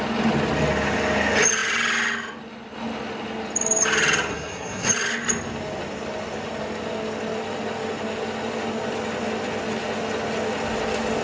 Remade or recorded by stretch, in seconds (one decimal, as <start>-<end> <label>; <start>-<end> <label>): 0.0-4.3 recorded; 4.3-4.9 remade; 4.9-11.2 recorded